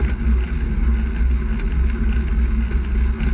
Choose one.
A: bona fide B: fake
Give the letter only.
A